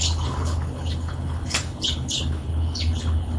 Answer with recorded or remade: remade